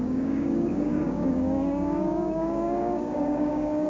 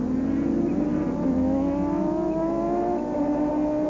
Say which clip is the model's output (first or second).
first